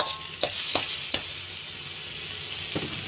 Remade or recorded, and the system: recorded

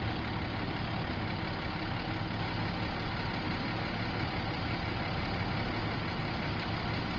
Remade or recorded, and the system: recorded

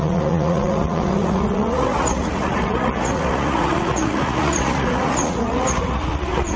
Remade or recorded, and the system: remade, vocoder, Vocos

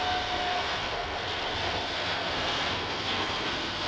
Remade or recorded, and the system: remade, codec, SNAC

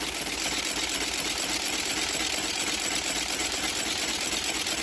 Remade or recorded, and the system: recorded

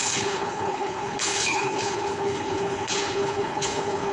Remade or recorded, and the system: remade, codec, HILCodec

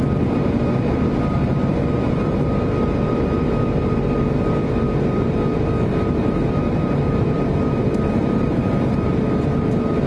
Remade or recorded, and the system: remade, vocoder, BigVGAN v2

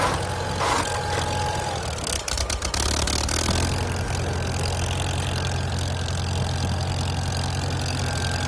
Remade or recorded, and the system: recorded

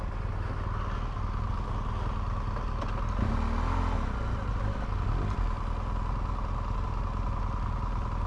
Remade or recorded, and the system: recorded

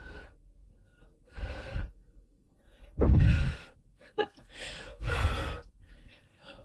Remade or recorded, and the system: remade, codec, SNAC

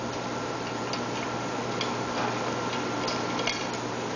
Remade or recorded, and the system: recorded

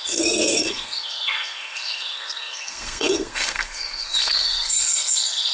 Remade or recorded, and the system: remade, codec, SNAC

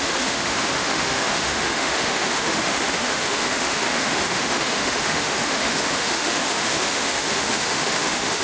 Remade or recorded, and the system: remade, autoencoder, DAC-VAE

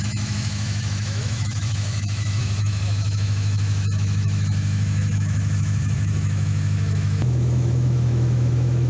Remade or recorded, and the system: remade, autoencoder, DAC-VAE